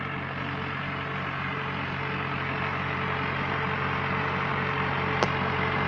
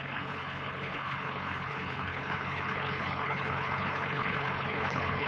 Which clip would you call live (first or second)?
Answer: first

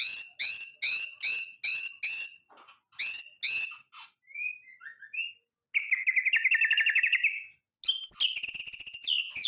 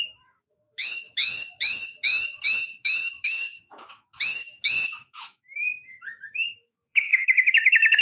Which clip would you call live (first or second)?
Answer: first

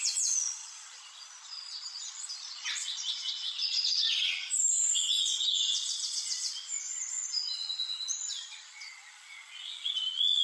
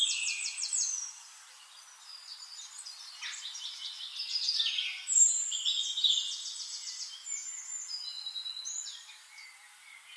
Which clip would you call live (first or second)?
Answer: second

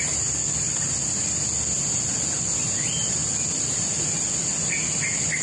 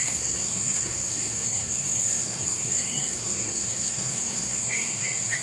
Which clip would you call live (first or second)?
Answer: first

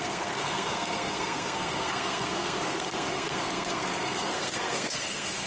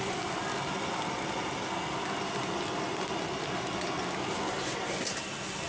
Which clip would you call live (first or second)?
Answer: second